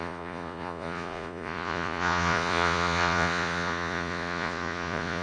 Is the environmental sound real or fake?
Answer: fake